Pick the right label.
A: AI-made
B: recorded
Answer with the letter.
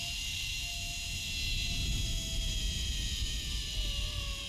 B